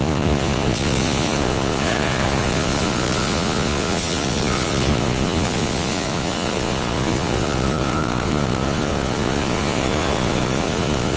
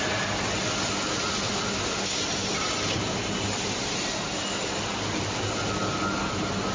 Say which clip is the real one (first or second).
second